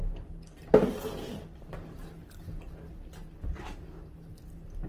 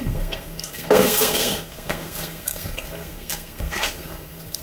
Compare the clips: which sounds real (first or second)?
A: first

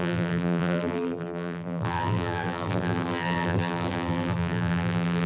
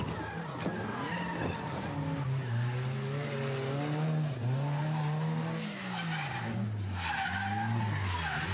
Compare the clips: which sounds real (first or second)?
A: second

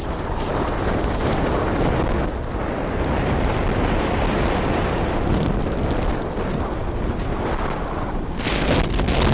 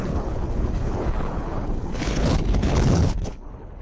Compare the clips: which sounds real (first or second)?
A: first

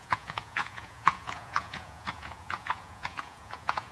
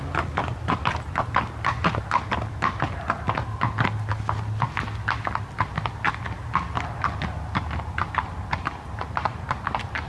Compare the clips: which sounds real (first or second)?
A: second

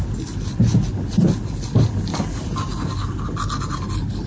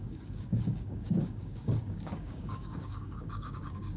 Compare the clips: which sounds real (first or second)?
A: first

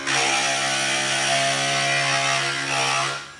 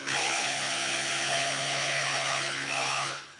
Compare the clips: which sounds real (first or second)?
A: first